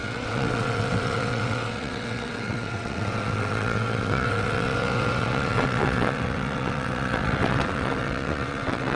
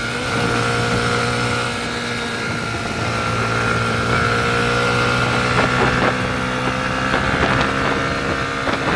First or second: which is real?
second